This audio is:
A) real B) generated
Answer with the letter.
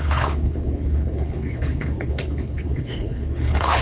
B